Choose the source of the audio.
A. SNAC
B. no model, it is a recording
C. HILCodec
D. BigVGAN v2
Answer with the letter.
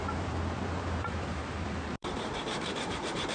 D